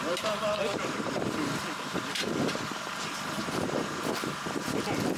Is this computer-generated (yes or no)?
yes